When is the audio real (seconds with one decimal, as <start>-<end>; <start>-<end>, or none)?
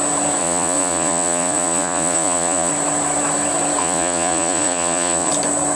0.0-0.4; 2.7-3.8; 5.3-5.8